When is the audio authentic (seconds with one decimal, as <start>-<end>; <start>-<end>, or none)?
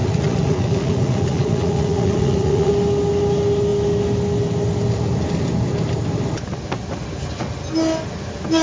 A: 2.7-8.6